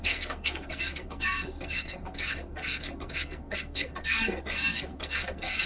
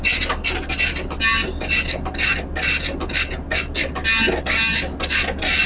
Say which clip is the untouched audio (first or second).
second